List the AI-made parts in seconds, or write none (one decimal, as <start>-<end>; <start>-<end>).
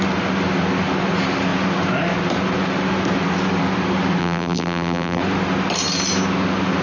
4.2-5.2